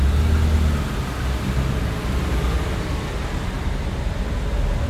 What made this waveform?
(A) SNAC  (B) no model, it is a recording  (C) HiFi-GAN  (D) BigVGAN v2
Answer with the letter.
B